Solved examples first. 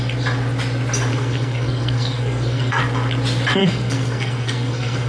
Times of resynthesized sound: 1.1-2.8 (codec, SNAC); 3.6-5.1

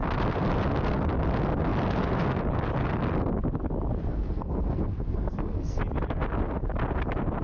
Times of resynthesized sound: 4.1-5.8 (codec, SNAC)